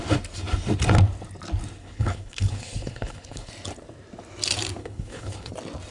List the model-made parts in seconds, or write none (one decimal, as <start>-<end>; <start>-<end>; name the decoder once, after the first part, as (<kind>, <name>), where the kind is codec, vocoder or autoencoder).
1.8-3.5 (codec, HILCodec); 4.8-5.5